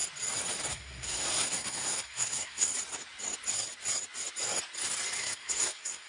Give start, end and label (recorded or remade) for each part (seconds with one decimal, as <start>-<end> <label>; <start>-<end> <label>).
0.0-0.7 recorded; 0.7-2.7 remade; 2.7-5.2 recorded; 5.2-6.1 remade